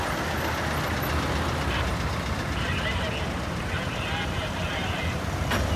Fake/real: real